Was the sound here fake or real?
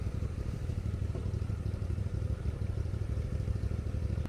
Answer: fake